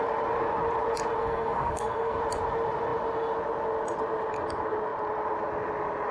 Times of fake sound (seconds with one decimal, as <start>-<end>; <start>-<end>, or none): 1.2-2.2